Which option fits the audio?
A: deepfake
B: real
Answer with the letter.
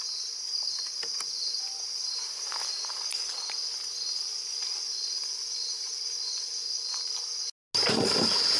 B